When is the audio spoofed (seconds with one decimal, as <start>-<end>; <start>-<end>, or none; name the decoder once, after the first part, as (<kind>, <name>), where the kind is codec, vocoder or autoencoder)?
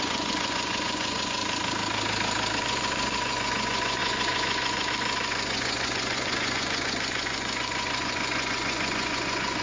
0.0-1.4 (vocoder, Vocos); 2.6-9.6